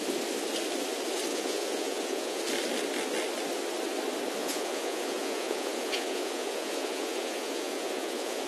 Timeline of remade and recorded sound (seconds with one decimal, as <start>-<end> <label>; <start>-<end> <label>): 0.0-1.3 recorded; 1.3-2.4 remade; 2.4-4.4 recorded; 4.4-8.5 remade